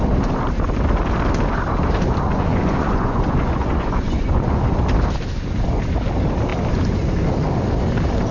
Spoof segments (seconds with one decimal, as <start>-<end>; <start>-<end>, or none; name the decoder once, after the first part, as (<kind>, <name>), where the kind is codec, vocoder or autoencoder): 2.3-4.6 (vocoder, Vocos)